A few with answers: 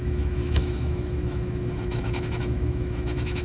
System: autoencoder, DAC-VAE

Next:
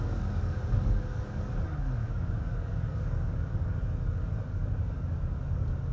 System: codec, DAC